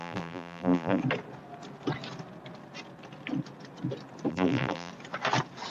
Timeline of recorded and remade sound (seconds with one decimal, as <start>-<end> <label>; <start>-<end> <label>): 0.0-1.0 remade; 1.0-4.3 recorded; 4.3-4.9 remade; 4.9-5.7 recorded